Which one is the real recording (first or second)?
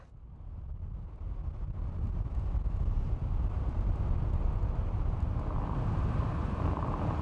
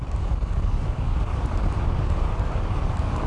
first